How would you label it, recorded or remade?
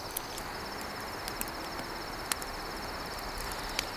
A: recorded